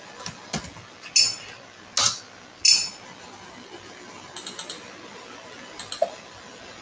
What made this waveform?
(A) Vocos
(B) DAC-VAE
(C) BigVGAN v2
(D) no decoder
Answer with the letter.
D